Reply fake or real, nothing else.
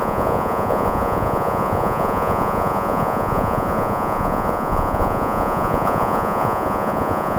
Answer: fake